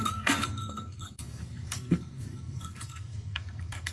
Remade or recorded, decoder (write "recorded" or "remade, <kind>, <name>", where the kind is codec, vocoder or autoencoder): remade, codec, SNAC